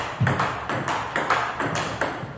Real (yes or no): yes